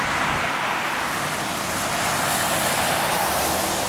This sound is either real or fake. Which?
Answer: real